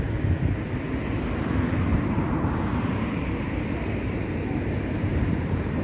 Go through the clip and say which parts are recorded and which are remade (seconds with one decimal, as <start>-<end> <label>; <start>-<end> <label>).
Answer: 0.0-1.9 recorded; 1.9-5.8 remade

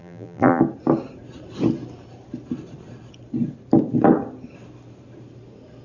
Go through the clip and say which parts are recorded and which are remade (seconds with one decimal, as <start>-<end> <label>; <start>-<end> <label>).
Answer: 0.0-0.6 remade; 0.6-5.8 recorded

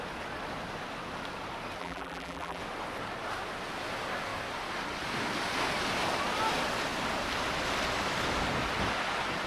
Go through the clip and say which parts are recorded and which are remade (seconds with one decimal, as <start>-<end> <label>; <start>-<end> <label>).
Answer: 0.0-1.8 recorded; 1.8-2.6 remade; 2.6-9.5 recorded

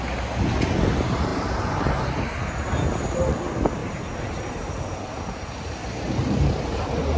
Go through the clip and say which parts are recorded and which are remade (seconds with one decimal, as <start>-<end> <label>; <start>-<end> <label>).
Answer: 0.0-1.3 recorded; 1.3-1.9 remade; 1.9-3.8 recorded; 3.8-7.2 remade

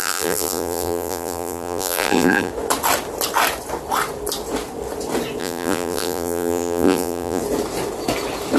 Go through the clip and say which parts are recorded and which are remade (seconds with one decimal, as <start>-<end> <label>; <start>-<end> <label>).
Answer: 0.0-2.5 remade; 2.5-5.4 recorded; 5.4-7.4 remade; 7.4-8.6 recorded

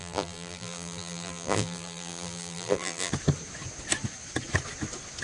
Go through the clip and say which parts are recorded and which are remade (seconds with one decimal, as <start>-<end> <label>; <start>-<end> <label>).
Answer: 0.0-3.1 remade; 3.1-5.2 recorded

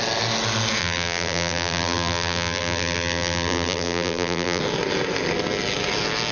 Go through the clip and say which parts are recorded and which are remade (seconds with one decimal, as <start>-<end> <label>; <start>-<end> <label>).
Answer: 0.0-0.8 recorded; 0.8-4.6 remade; 4.6-6.3 recorded

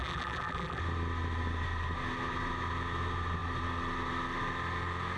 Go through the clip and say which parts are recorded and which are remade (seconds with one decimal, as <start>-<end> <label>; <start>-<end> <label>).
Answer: 0.0-0.8 remade; 0.8-5.2 recorded